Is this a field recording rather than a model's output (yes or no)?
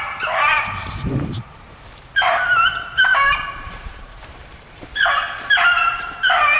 no